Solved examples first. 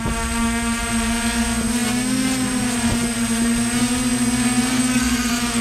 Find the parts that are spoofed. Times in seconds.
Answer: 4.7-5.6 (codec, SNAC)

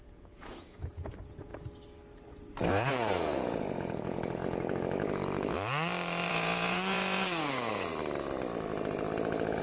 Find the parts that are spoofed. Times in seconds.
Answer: 0.0-1.5 (vocoder, Vocos); 2.7-4.4; 6.3-7.9

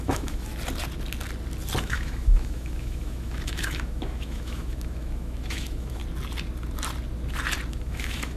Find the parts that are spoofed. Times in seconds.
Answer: 0.0-0.5 (autoencoder, DAC-VAE); 1.8-6.0; 7.7-8.4

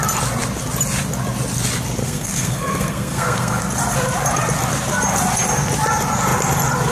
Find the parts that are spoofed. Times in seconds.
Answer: 2.0-3.6 (codec, SNAC)

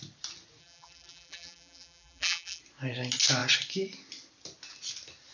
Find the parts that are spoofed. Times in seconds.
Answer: 0.6-2.6 (vocoder, BigVGAN v2)

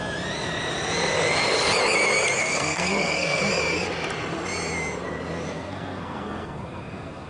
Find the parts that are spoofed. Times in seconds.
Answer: 2.4-3.4 (codec, SNAC); 5.5-7.3

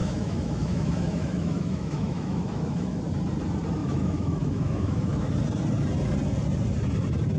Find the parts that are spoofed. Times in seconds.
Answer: 0.0-3.0 (autoencoder, DAC-VAE); 3.8-5.3